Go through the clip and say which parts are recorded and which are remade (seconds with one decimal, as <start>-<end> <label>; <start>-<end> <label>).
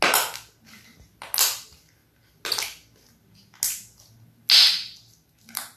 0.0-5.8 recorded